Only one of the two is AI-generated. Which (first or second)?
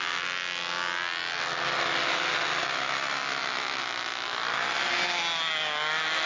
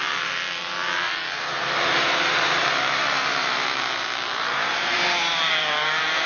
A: second